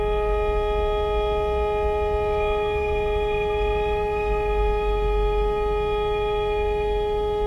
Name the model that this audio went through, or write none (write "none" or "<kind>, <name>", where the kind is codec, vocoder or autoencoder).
none